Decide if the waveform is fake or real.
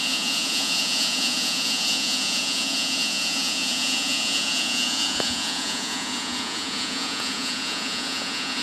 fake